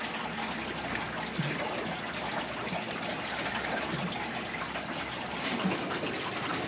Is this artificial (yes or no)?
no